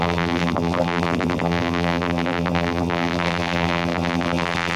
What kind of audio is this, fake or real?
fake